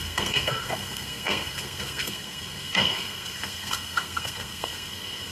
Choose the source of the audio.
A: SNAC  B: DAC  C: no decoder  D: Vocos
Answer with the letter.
A